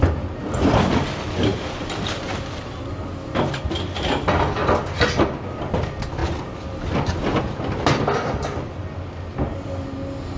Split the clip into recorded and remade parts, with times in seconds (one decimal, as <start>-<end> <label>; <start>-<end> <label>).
0.0-1.5 recorded; 1.5-2.4 remade; 2.4-10.4 recorded